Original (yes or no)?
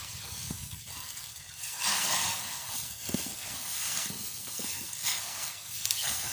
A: no